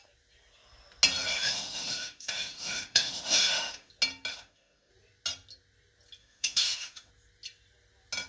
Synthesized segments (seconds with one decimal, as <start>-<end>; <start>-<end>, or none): 1.3-3.9; 4.3-4.9; 6.2-7.1